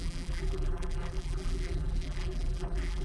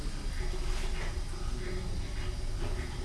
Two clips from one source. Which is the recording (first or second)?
second